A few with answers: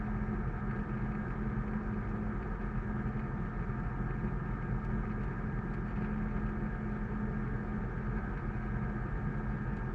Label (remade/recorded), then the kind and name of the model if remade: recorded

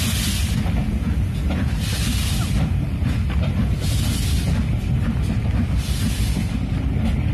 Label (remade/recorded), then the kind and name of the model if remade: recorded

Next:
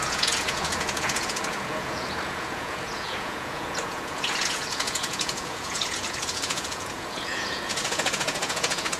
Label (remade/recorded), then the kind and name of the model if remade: remade, vocoder, Vocos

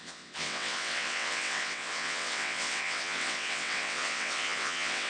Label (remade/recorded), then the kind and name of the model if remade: remade, vocoder, WaveNeXt